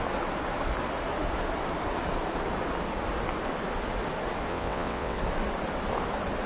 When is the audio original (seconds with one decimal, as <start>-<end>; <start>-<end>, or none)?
0.0-4.5; 5.2-6.5